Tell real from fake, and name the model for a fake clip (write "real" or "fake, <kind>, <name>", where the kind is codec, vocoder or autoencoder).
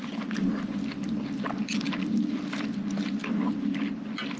real